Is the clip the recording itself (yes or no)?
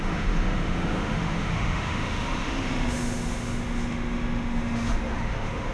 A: no